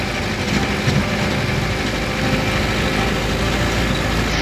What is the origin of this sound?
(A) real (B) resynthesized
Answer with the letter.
A